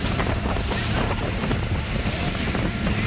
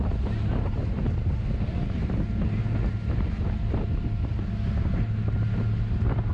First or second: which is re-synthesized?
first